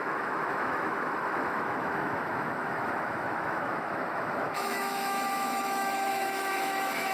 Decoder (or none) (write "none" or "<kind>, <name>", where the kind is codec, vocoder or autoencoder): autoencoder, DAC-VAE